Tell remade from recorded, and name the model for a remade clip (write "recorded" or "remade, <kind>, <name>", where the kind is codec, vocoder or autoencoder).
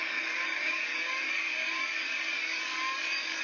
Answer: remade, codec, DAC